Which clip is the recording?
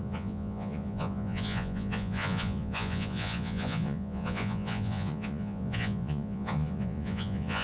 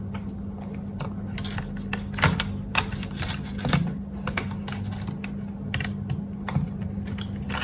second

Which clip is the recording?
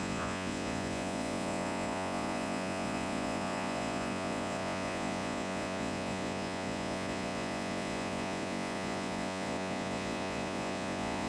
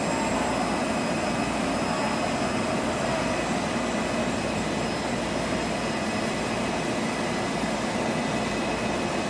second